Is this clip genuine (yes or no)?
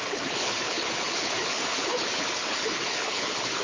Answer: no